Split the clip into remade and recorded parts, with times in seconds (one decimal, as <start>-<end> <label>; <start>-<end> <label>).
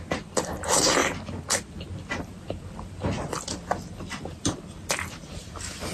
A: 0.0-2.3 recorded; 2.3-4.5 remade; 4.5-5.9 recorded